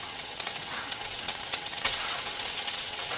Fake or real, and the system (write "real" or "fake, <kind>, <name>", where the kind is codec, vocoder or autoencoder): fake, vocoder, WaveNeXt